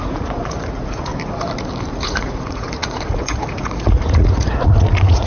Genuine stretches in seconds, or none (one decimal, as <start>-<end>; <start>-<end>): 1.1-1.9